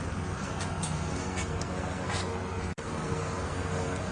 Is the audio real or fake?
fake